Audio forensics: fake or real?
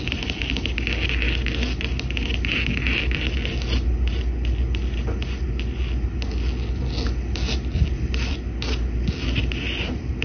real